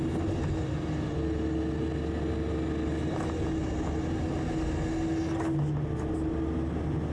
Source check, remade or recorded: recorded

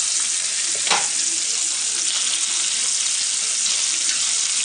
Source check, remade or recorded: recorded